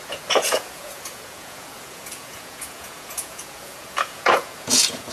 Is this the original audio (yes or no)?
no